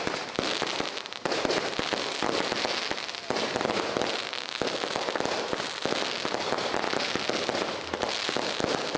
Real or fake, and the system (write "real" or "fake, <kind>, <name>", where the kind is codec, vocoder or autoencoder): real